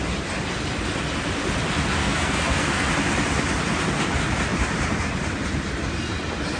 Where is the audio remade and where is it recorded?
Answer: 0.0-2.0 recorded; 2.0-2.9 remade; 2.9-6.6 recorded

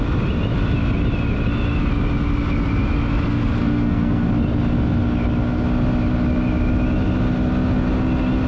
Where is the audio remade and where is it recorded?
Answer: 0.0-3.6 recorded; 3.6-4.3 remade; 4.3-8.5 recorded

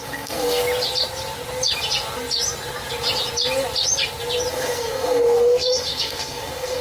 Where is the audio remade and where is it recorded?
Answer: 0.0-0.6 remade; 0.6-4.5 recorded; 4.5-6.8 remade